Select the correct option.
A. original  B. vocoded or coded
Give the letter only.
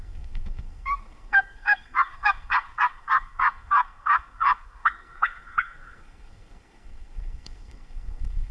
B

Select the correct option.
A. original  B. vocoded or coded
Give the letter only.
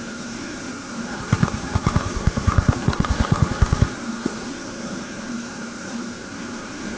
B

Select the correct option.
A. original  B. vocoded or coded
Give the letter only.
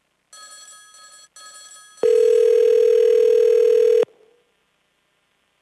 A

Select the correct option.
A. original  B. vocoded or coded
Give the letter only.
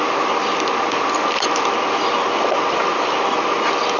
A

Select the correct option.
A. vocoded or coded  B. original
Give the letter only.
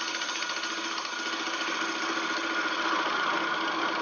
B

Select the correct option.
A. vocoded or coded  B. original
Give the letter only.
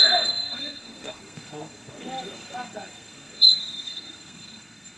A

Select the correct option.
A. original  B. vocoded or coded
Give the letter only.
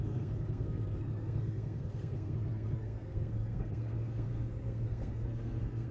B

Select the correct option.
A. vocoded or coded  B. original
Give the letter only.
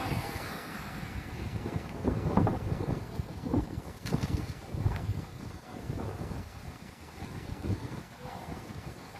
A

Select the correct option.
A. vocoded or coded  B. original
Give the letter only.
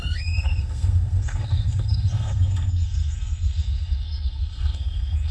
A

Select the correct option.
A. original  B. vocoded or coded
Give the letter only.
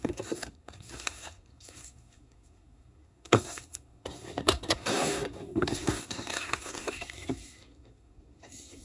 B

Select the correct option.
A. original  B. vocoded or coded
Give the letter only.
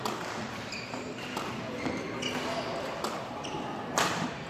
A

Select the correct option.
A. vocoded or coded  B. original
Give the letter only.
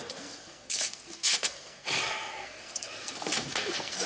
A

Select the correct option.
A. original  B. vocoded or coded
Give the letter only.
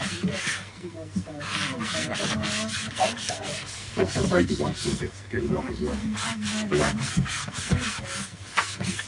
B